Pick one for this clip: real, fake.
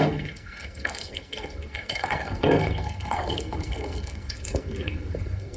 fake